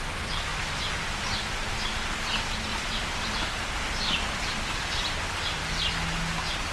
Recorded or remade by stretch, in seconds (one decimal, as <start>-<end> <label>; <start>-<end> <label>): 0.0-0.5 recorded; 0.5-1.2 remade; 1.2-2.7 recorded; 2.7-4.4 remade; 4.4-6.7 recorded